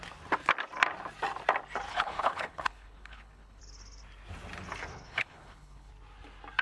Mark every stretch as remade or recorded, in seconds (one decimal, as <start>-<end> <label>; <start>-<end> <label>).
0.0-1.9 recorded; 1.9-3.6 remade; 3.6-4.9 recorded; 4.9-5.9 remade; 5.9-6.6 recorded